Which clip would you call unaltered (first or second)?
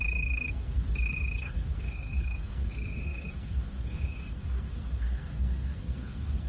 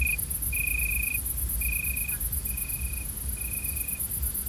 second